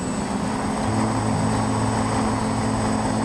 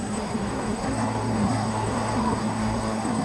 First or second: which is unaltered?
first